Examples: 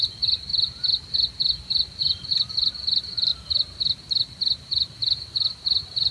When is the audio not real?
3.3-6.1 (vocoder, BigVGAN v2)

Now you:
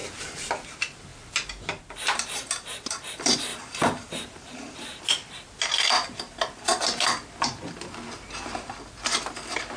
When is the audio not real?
0.0-0.5 (vocoder, BigVGAN v2); 3.5-5.0

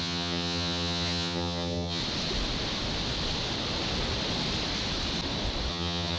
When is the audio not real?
0.0-2.0 (vocoder, HiFi-GAN); 5.7-6.2

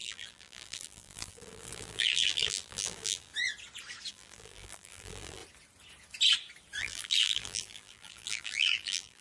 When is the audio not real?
0.0-3.3 (vocoder, BigVGAN v2); 4.1-5.4; 6.8-9.2